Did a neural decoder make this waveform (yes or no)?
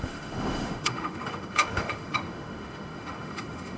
yes